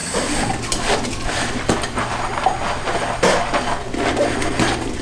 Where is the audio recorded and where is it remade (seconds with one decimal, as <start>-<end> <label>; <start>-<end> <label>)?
0.0-1.5 remade; 1.5-5.0 recorded